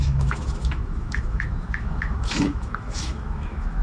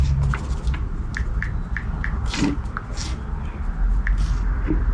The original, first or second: second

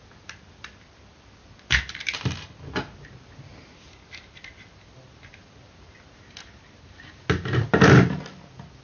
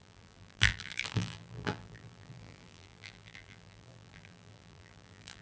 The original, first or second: first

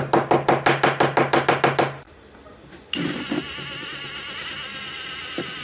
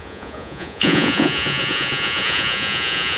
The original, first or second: first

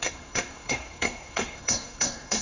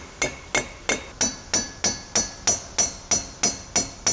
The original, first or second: second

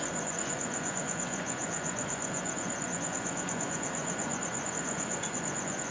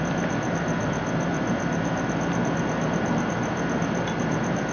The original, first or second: second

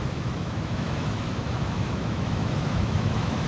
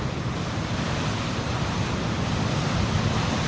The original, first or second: second